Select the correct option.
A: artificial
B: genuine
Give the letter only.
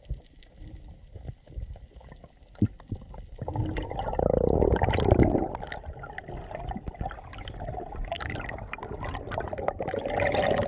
B